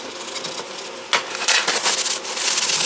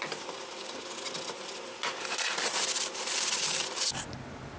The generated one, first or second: second